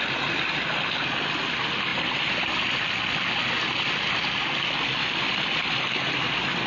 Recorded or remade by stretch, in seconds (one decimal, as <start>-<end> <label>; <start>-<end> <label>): 0.0-6.7 recorded